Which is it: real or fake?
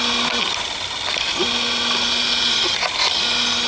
real